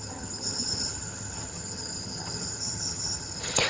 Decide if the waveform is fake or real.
fake